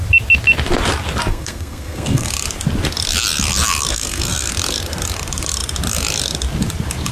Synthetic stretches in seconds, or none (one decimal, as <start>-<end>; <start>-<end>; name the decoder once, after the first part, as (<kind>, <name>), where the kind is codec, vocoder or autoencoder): 1.3-2.3 (codec, SNAC); 3.9-4.5